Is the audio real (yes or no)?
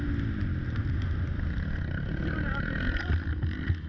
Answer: yes